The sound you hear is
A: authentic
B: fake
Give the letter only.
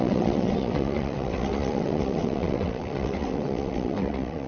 B